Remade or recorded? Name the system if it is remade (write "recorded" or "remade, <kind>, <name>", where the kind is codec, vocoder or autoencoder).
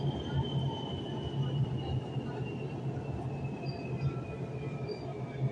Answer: recorded